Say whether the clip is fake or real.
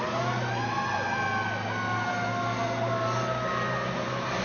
real